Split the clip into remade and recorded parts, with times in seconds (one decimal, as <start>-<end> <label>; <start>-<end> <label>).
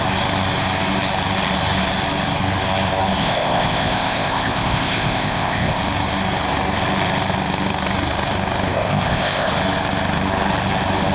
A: 0.0-3.2 recorded; 3.2-5.8 remade; 5.8-8.7 recorded; 8.7-9.5 remade; 9.5-11.1 recorded